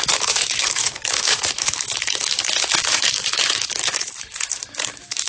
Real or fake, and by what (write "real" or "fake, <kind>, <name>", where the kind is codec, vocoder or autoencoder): fake, autoencoder, DAC-VAE